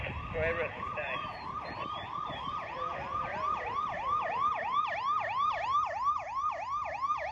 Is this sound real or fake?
fake